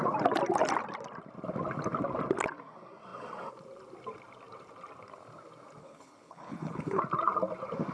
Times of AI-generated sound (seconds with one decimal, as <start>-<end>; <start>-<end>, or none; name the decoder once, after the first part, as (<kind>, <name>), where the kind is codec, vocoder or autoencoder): 5.8-7.0 (codec, HILCodec)